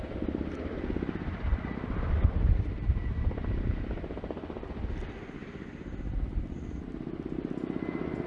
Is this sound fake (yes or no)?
no